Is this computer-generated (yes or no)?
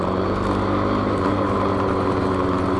no